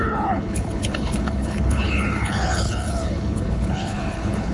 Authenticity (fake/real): fake